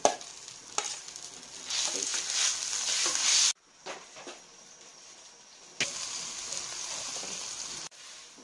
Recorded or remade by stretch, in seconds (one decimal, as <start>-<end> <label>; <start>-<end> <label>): 0.0-8.4 recorded